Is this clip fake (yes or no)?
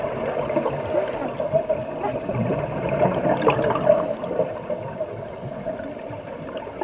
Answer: no